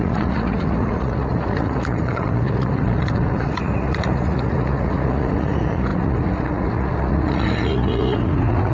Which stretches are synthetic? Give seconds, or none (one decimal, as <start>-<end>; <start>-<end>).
0.0-8.7